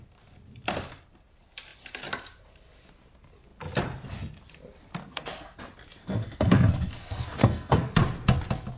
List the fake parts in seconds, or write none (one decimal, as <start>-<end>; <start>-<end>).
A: 5.0-5.6; 6.0-7.9